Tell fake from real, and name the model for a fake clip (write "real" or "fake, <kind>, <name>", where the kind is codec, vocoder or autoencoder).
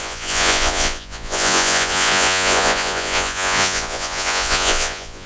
fake, vocoder, Vocos